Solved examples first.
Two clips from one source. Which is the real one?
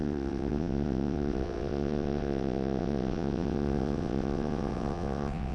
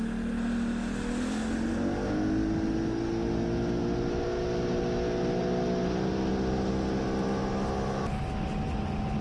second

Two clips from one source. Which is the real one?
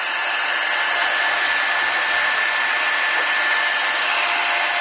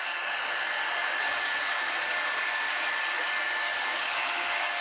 first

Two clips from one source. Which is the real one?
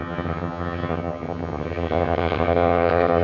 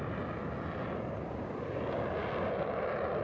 second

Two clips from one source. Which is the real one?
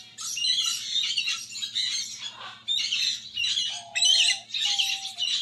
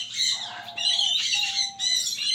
first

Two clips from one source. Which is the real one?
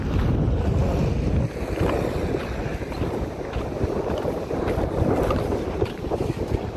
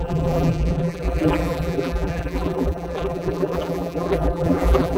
first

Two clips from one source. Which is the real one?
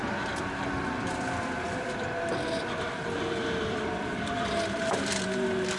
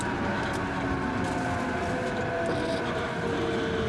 second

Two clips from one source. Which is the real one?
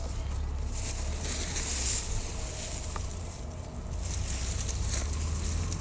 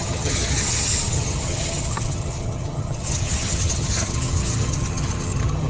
first